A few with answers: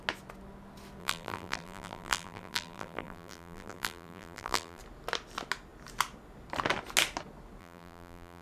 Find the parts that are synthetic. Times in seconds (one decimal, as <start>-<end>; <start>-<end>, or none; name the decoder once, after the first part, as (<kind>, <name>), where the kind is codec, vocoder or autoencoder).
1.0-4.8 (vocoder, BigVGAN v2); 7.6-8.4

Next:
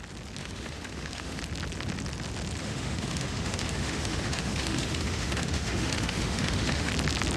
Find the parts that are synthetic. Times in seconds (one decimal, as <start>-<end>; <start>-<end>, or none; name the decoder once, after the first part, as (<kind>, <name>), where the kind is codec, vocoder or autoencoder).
0.4-1.4 (autoencoder, DAC-VAE); 2.6-6.9

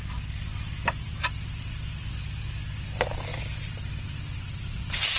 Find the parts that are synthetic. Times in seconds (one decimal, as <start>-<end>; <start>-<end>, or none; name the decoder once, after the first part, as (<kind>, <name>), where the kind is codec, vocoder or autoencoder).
0.5-2.1 (vocoder, BigVGAN v2); 3.3-5.2